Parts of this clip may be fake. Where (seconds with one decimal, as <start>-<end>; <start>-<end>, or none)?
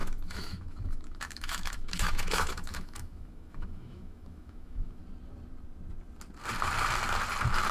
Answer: 0.0-5.0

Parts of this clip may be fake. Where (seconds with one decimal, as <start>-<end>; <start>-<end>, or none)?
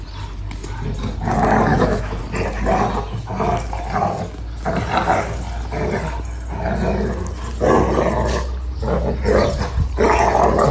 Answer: 1.7-2.2